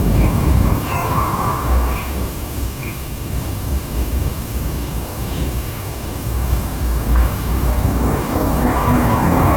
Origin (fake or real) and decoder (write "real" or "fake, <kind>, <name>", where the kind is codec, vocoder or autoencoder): fake, codec, DAC